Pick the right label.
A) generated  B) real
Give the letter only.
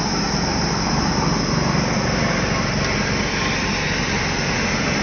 B